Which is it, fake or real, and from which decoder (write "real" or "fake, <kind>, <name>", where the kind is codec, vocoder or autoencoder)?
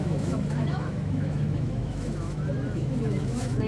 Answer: fake, autoencoder, DAC-VAE